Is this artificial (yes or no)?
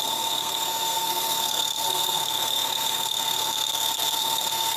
yes